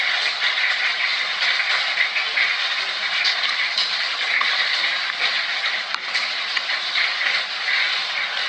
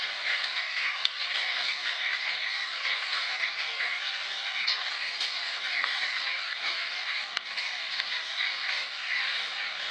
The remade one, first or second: second